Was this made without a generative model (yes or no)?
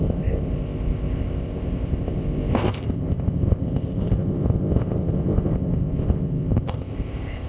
no